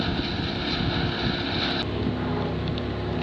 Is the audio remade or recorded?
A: recorded